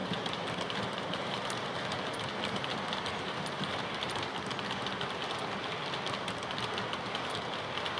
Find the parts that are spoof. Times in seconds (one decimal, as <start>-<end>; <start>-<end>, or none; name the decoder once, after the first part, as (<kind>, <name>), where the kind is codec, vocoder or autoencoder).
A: 0.0-4.3 (vocoder, BigVGAN v2)